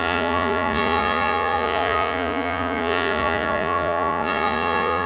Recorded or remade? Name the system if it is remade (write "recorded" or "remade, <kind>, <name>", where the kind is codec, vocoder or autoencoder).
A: remade, vocoder, Vocos